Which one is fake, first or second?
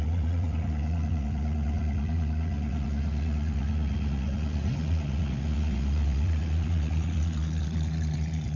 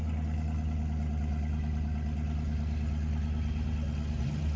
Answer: first